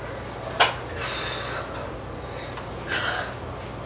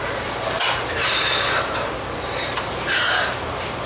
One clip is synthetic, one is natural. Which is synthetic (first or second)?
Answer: second